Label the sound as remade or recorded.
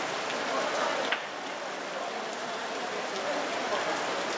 recorded